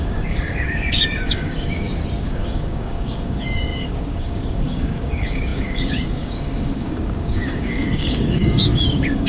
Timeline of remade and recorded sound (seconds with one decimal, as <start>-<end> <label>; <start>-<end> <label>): 0.0-9.3 remade